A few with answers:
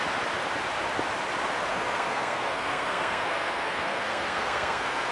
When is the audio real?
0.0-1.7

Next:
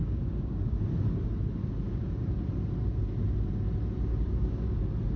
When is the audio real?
0.8-1.6; 2.5-4.1; 4.8-5.2

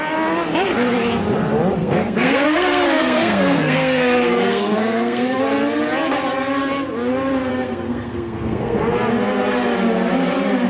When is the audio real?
0.0-1.8; 5.4-7.5; 8.8-10.7

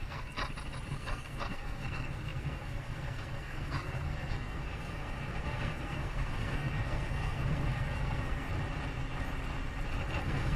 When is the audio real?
0.4-0.9; 8.5-10.2

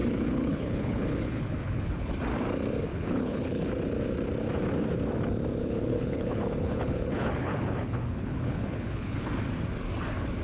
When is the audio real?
2.1-2.9; 3.7-5.6; 9.3-10.4

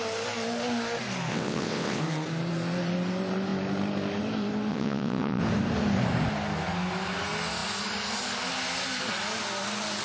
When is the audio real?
0.0-1.3; 2.0-4.7; 5.4-10.0

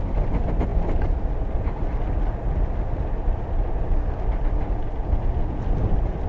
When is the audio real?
0.0-5.0; 5.6-6.3

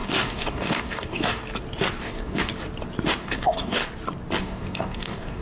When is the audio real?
1.4-2.0; 2.5-3.2; 3.8-4.4